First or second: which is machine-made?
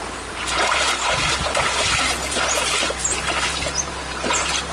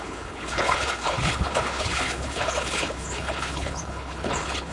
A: second